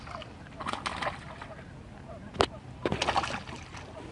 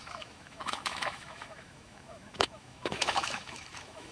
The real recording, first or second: first